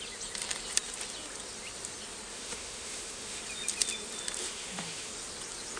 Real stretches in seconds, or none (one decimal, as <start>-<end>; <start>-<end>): 0.0-2.3; 3.4-4.4; 5.1-5.8